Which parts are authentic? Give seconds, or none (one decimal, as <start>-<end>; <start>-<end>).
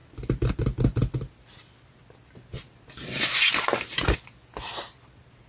0.0-5.5